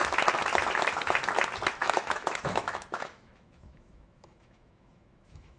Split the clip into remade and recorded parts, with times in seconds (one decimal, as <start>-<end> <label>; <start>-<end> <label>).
0.0-1.8 recorded; 1.8-5.6 remade